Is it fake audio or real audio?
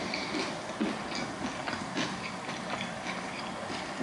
real